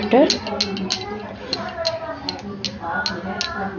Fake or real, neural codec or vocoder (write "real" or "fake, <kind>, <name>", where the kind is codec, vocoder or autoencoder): real